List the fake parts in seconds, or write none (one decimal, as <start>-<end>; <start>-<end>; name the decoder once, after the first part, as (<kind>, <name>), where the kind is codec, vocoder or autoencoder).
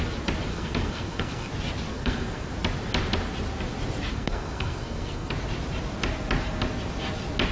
0.5-1.5 (codec, SNAC); 1.9-2.5; 4.1-5.3